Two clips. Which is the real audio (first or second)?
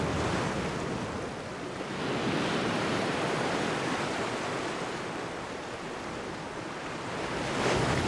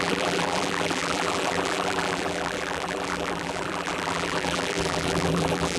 first